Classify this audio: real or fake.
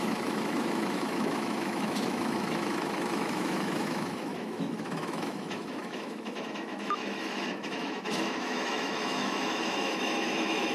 fake